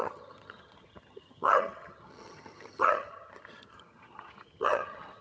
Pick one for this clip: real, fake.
fake